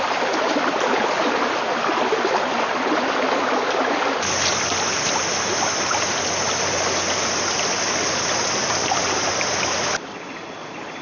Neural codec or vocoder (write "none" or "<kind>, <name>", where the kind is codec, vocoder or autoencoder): none